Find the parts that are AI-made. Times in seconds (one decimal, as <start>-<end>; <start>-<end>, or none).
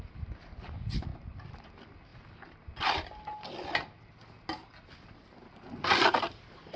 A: 1.1-1.7